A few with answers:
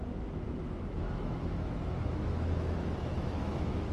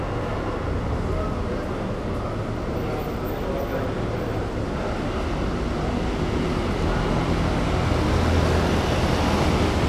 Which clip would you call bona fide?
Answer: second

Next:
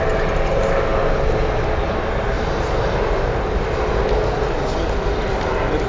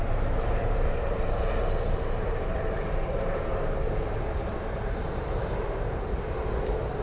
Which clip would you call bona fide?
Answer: first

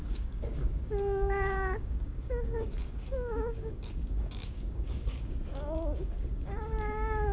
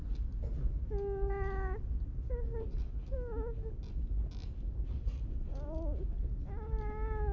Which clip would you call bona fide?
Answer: second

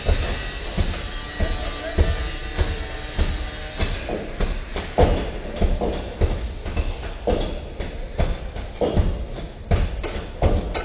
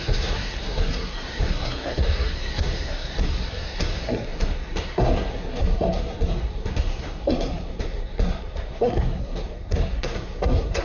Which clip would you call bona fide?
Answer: first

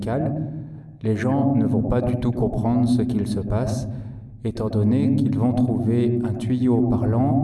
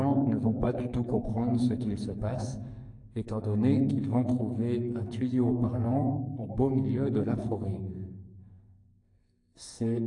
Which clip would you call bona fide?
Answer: first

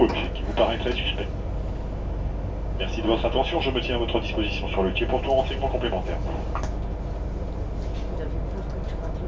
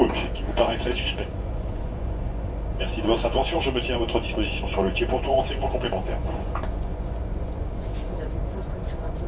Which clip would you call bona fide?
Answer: first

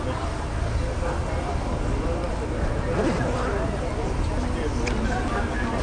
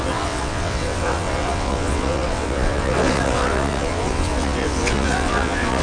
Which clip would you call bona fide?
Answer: first